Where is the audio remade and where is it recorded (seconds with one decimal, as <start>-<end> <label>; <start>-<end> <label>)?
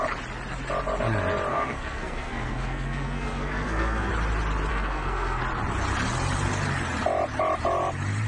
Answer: 0.0-1.5 recorded; 1.5-4.1 remade; 4.1-4.7 recorded; 4.7-5.4 remade; 5.4-8.3 recorded